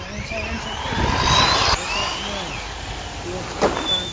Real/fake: real